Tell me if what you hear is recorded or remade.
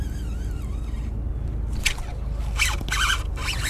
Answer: recorded